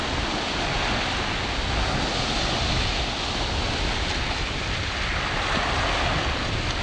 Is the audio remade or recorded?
recorded